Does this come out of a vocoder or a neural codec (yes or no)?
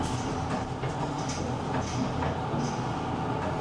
no